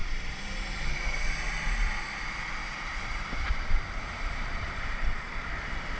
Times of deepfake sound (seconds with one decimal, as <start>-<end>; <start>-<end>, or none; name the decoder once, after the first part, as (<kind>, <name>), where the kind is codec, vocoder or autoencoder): 0.0-1.4 (vocoder, BigVGAN v2); 2.6-5.5